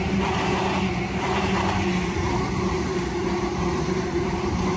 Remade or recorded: recorded